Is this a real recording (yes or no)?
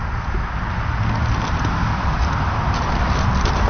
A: yes